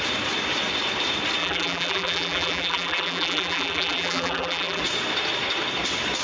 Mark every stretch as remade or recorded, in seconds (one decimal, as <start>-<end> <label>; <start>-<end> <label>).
0.0-1.4 recorded; 1.4-4.8 remade; 4.8-6.2 recorded